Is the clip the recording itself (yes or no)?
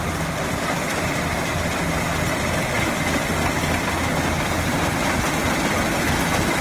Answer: yes